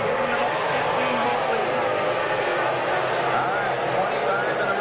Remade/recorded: recorded